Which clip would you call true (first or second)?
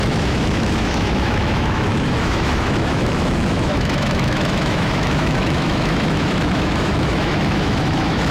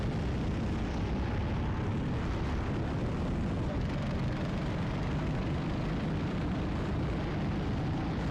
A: second